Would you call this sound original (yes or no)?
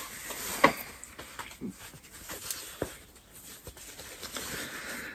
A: yes